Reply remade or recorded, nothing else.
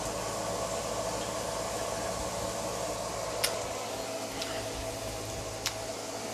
recorded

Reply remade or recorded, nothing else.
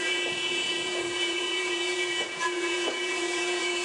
remade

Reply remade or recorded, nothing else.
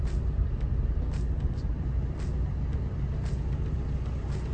recorded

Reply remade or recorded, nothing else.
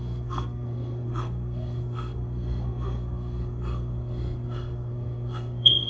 remade